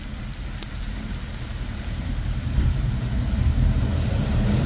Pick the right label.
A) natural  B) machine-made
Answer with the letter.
B